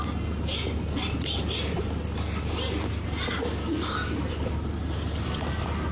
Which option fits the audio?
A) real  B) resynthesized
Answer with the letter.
A